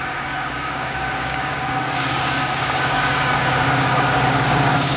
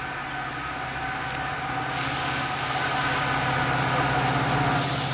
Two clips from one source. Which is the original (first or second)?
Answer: second